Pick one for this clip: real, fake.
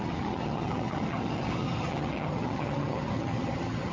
fake